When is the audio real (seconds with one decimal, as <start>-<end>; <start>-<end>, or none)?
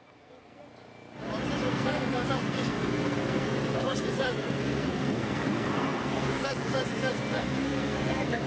0.6-1.7